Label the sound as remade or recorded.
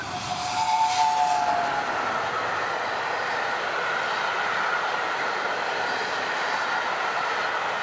recorded